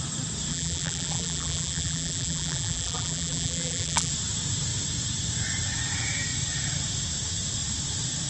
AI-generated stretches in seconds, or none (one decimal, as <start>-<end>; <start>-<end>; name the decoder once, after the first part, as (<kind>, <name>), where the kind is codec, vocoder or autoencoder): 0.5-4.1 (vocoder, BigVGAN v2)